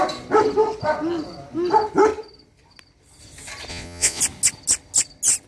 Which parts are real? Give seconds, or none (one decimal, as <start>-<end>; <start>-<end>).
0.0-3.7; 4.2-5.5